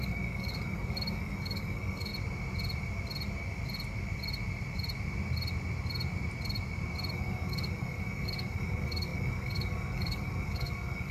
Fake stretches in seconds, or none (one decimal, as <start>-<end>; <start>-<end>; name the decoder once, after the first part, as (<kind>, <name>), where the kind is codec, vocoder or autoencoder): 0.0-2.1 (codec, DAC); 7.1-11.1

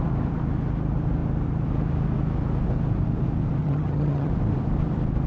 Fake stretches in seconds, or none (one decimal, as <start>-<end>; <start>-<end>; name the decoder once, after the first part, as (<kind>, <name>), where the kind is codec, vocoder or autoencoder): 3.6-4.3 (vocoder, HiFi-GAN)

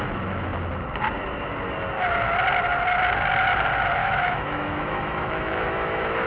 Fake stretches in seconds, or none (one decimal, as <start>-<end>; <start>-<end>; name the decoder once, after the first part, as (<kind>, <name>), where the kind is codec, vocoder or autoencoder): 4.0-6.3 (autoencoder, DAC-VAE)

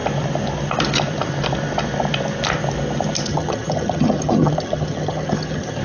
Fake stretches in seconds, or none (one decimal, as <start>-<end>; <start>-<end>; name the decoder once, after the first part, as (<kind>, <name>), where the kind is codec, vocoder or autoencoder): 3.3-5.8 (vocoder, HiFi-GAN)

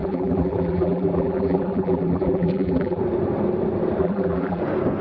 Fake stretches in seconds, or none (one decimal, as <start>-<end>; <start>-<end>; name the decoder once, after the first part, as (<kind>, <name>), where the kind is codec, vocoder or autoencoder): 0.0-3.0 (vocoder, BigVGAN v2); 4.0-4.6

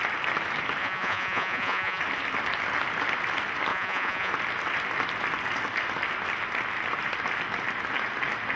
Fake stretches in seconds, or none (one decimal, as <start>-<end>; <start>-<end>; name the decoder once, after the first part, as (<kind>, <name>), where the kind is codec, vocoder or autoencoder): 0.8-2.0 (vocoder, Vocos); 3.7-4.3

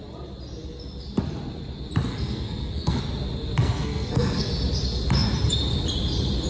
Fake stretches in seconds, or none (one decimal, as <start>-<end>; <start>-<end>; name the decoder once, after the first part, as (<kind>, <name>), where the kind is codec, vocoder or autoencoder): 2.1-3.0 (codec, SNAC); 3.6-4.5

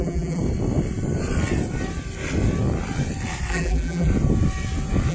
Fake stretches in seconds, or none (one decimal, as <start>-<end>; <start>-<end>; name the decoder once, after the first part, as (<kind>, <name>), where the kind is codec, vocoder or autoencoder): 0.0-0.4 (vocoder, BigVGAN v2); 3.5-4.1